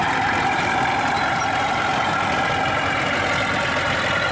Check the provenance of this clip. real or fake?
real